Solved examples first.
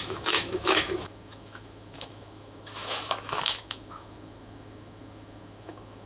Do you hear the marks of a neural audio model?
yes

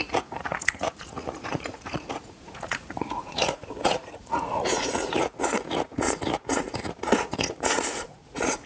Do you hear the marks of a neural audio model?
yes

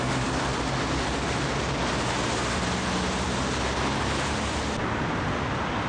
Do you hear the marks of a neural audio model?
no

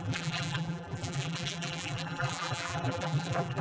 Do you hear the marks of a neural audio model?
yes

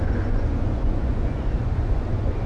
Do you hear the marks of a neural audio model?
yes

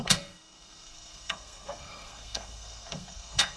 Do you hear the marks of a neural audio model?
yes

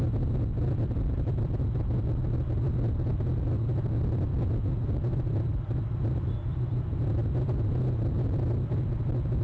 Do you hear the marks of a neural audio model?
no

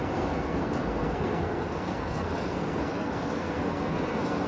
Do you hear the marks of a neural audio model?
yes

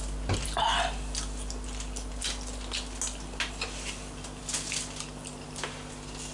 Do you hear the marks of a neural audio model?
no